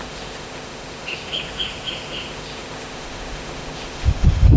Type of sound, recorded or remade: remade